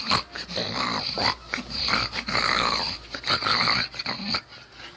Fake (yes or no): no